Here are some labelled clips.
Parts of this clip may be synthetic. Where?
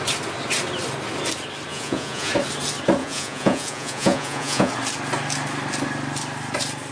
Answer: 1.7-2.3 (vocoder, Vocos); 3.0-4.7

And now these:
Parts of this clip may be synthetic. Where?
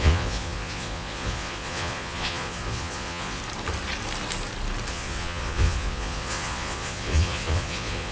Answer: 0.0-3.4 (vocoder, Vocos); 4.9-8.1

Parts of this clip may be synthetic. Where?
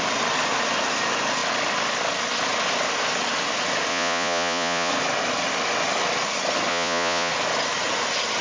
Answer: 3.9-4.9 (vocoder, Vocos); 6.7-7.3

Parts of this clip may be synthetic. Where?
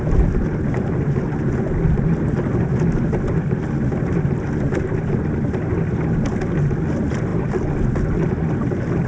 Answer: none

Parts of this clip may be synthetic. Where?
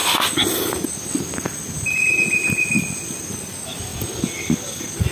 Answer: none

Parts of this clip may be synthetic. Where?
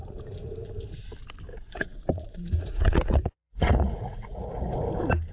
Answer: 1.5-4.7 (vocoder, Vocos)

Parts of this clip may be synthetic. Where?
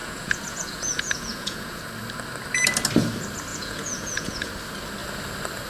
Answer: 0.0-1.8 (vocoder, Vocos); 3.5-4.5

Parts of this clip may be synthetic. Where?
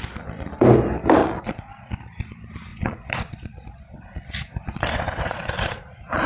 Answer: 1.2-1.9 (vocoder, Vocos); 2.7-6.3